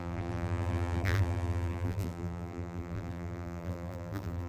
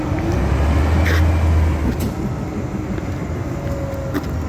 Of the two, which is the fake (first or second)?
first